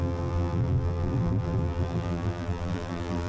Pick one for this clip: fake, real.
fake